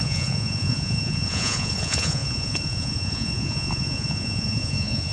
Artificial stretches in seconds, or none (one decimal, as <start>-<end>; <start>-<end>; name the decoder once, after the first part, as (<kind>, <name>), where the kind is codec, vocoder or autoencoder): 0.0-5.1 (vocoder, Vocos)